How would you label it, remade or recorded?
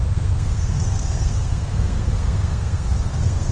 remade